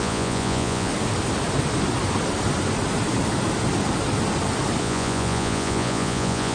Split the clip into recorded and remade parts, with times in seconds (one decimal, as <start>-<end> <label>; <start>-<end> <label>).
0.0-0.9 remade; 0.9-4.8 recorded; 4.8-6.5 remade

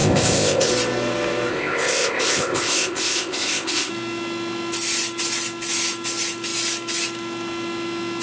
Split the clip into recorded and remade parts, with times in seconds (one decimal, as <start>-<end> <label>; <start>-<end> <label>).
0.0-0.7 remade; 0.7-1.5 recorded; 1.5-3.9 remade; 3.9-8.2 recorded

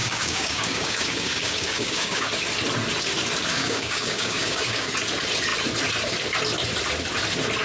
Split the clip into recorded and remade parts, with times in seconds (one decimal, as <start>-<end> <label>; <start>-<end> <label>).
0.0-2.3 remade; 2.3-3.5 recorded; 3.5-4.9 remade; 4.9-7.6 recorded

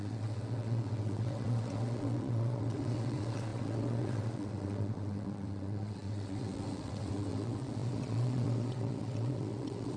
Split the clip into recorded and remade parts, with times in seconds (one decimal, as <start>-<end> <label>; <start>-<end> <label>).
0.0-10.0 remade

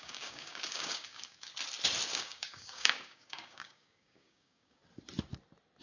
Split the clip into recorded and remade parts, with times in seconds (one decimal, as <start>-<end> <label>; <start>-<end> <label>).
0.0-1.5 remade; 1.5-2.1 recorded; 2.1-4.8 remade; 4.8-5.8 recorded